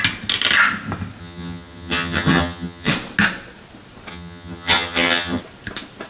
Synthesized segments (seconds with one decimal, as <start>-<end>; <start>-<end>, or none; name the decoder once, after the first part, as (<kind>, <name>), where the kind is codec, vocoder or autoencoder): 1.2-2.9 (vocoder, HiFi-GAN); 4.1-5.4